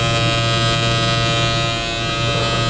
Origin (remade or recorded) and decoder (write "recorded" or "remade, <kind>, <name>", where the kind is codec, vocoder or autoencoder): recorded